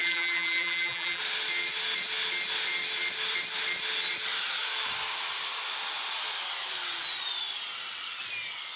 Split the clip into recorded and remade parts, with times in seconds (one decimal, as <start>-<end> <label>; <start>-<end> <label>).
0.0-1.2 remade; 1.2-8.8 recorded